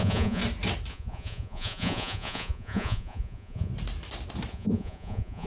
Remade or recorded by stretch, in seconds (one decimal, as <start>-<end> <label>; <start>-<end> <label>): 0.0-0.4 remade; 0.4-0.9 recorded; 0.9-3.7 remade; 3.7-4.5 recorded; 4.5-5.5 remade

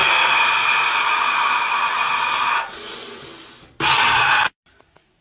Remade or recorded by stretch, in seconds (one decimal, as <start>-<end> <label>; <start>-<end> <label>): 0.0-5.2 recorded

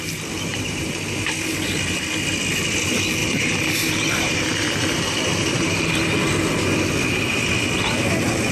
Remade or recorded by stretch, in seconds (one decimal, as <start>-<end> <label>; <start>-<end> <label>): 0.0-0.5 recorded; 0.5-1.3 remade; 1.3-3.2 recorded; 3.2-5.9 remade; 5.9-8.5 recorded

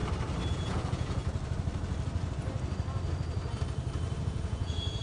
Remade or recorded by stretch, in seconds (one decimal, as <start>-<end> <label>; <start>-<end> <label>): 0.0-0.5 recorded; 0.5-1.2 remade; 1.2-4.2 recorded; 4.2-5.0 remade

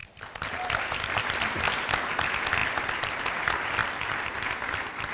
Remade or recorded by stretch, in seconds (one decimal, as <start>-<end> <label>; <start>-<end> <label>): 0.0-5.1 recorded

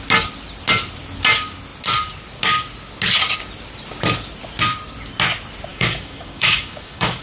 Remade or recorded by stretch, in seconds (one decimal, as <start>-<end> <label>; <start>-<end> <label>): 0.0-5.7 recorded; 5.7-7.2 remade

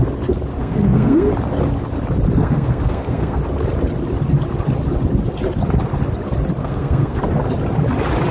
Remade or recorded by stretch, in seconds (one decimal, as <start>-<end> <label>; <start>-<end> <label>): 0.0-0.5 recorded; 0.5-1.3 remade; 1.3-2.4 recorded; 2.4-3.4 remade; 3.4-6.6 recorded; 6.6-7.2 remade; 7.2-8.3 recorded

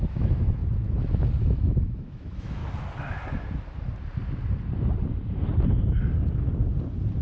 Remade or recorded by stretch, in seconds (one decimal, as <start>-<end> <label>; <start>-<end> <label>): 0.0-0.6 remade; 0.6-1.4 recorded; 1.4-2.6 remade; 2.6-7.2 recorded